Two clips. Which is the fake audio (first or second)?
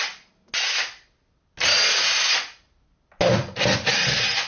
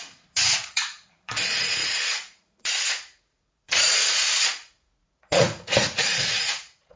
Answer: second